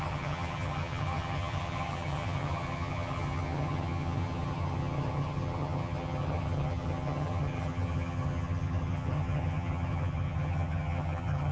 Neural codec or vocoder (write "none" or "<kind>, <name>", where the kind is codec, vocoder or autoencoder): vocoder, HiFi-GAN